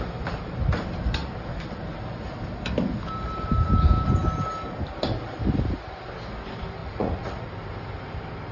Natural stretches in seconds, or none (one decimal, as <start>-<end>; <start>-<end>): 0.0-6.8; 7.5-8.5

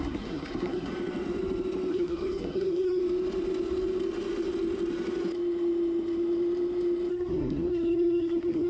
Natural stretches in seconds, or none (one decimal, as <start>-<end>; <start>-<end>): 0.9-1.9; 3.0-7.1

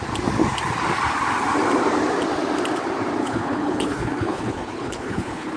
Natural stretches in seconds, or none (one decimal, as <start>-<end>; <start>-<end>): 0.0-3.2